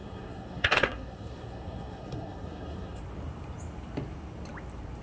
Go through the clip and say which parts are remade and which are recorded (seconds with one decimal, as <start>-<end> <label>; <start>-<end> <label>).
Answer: 0.0-3.0 remade; 3.0-5.0 recorded